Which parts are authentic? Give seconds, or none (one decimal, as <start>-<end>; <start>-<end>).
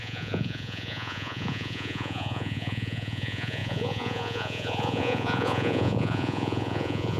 none